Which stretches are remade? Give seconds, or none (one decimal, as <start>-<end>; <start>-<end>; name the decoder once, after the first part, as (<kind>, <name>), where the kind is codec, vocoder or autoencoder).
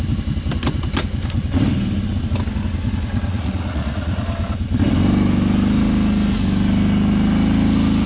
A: 3.3-4.2 (vocoder, Vocos)